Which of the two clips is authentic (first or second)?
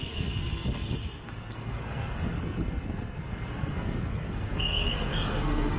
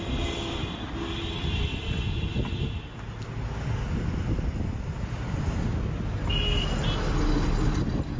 second